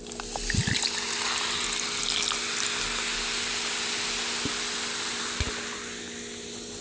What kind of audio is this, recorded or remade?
recorded